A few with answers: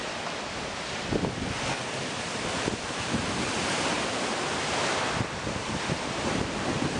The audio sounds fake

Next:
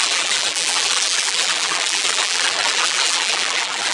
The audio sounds fake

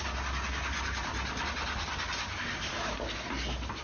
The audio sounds real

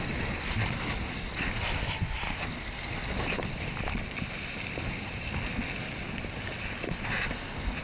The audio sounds real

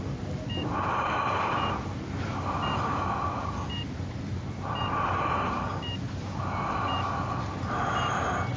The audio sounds real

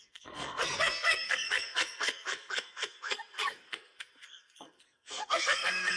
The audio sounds fake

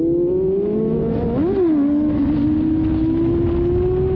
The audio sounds real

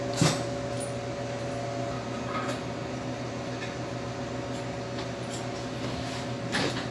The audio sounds real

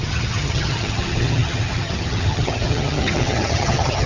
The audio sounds fake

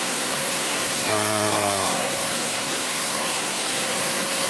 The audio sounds fake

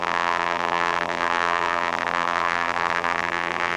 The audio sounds fake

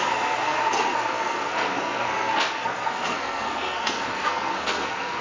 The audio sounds fake